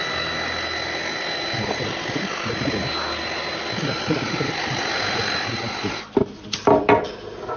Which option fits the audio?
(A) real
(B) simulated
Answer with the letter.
A